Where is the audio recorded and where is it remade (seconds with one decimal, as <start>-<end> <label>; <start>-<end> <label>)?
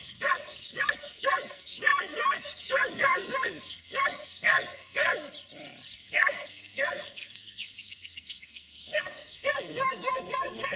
0.0-5.1 remade; 5.1-6.0 recorded; 6.0-10.8 remade